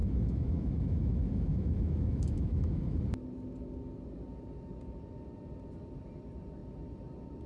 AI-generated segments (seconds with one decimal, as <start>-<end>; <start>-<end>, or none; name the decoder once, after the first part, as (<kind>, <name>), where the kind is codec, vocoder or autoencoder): 0.0-3.0 (autoencoder, DAC-VAE)